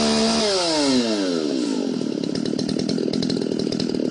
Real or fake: real